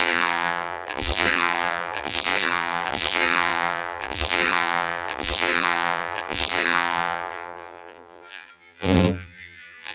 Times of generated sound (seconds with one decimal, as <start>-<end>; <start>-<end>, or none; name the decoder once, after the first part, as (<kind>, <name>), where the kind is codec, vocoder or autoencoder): 0.0-9.9 (vocoder, BigVGAN v2)